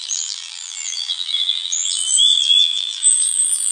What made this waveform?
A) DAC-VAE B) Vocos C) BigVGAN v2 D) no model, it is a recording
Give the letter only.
C